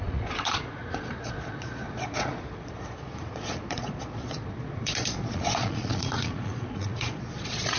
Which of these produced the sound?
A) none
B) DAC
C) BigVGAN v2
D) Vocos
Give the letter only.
D